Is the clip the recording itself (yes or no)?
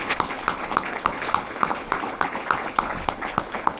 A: no